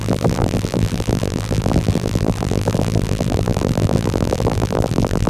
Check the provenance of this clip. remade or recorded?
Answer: remade